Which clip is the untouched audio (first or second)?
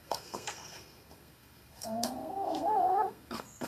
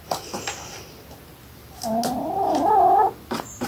second